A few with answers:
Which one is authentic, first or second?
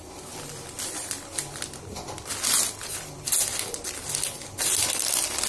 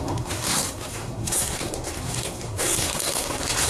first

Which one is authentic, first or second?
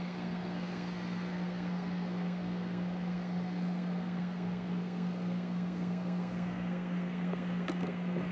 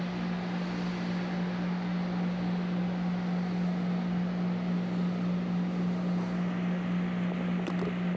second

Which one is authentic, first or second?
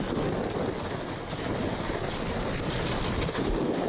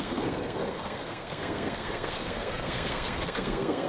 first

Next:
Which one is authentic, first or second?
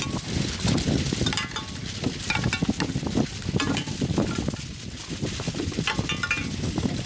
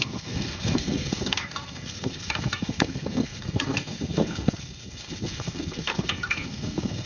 first